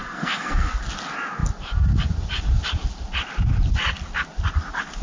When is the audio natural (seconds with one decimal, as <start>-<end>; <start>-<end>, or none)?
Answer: 0.8-5.0